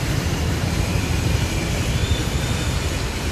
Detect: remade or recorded remade